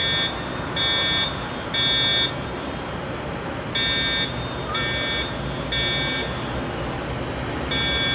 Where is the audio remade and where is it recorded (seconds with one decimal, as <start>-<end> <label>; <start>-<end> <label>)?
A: 0.0-8.1 recorded